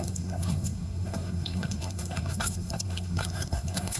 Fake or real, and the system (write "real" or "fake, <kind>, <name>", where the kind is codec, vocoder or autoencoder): fake, codec, SNAC